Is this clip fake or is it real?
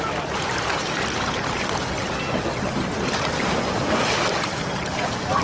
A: real